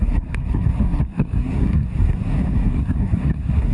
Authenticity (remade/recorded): remade